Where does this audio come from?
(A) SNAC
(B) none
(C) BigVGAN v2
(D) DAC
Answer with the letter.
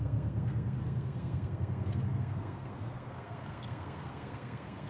A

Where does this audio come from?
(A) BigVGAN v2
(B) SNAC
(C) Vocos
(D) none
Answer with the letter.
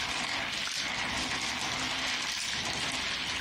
D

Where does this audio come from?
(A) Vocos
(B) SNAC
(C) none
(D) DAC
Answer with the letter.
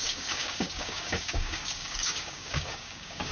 D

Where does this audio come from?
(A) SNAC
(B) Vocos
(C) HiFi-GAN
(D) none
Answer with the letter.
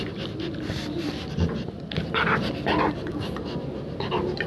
D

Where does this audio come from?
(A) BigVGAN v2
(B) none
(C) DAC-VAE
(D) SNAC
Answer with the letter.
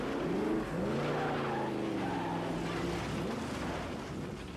B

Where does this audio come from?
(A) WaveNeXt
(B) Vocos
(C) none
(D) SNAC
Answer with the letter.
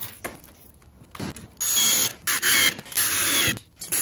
C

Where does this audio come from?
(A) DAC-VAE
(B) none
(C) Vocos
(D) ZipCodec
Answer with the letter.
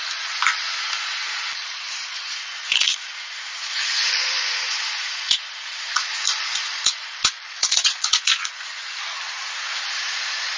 C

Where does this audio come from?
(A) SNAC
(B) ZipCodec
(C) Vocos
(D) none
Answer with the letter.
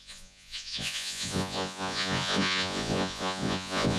C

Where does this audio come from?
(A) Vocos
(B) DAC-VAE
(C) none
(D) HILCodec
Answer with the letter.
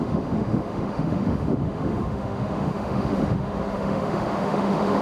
B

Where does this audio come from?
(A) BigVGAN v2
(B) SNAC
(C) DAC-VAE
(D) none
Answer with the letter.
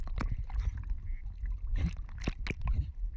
D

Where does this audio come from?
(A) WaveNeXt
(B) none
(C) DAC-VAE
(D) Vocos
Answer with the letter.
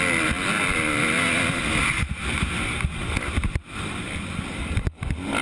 B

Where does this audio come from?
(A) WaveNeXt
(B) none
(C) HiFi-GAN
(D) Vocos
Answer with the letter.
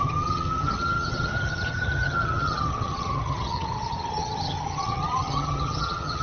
C